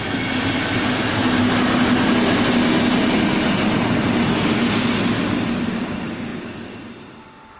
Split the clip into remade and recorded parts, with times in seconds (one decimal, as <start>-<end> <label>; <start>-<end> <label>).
0.0-7.6 recorded